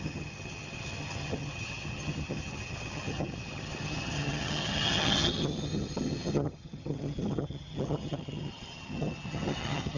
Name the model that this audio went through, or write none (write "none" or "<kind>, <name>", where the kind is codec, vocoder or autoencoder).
vocoder, HiFi-GAN